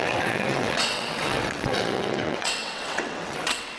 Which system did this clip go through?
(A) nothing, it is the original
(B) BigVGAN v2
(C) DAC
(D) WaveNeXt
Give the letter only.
D